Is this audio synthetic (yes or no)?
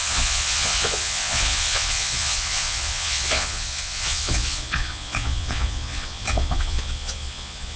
yes